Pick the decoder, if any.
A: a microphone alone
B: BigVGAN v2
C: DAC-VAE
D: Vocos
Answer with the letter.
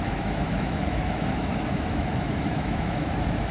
C